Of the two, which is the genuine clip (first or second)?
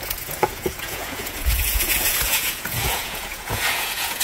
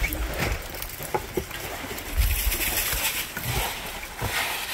second